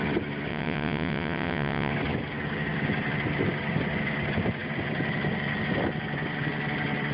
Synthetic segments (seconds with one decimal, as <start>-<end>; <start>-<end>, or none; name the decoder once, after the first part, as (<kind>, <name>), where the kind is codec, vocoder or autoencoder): 0.5-1.9 (vocoder, WaveNeXt)